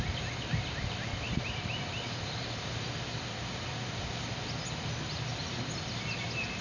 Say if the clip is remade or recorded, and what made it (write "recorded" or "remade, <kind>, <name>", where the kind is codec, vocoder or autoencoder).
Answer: recorded